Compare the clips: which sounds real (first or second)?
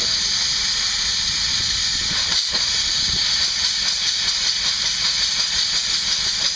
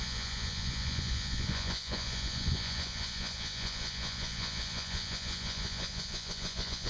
first